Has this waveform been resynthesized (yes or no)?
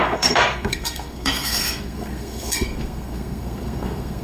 yes